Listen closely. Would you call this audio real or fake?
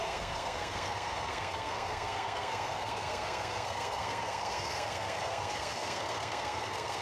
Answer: fake